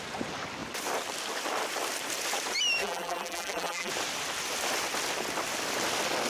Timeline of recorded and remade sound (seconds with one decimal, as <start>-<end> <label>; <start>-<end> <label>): 0.0-2.8 recorded; 2.8-3.9 remade; 3.9-6.3 recorded